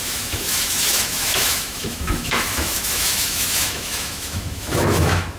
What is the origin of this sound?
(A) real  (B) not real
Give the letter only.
B